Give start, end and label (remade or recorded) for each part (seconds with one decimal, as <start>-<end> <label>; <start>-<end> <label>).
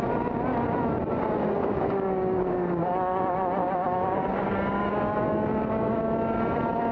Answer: 0.0-1.6 recorded; 1.6-2.8 remade; 2.8-3.6 recorded; 3.6-6.0 remade; 6.0-6.9 recorded